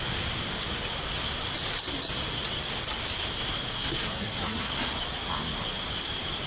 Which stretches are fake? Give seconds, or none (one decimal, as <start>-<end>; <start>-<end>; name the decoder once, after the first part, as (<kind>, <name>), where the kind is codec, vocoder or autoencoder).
3.7-4.7 (codec, SNAC)